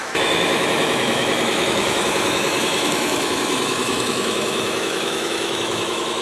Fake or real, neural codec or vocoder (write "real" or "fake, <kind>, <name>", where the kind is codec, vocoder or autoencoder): fake, autoencoder, DAC-VAE